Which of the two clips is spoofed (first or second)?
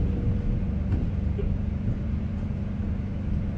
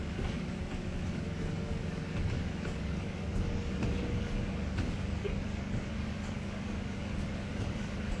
second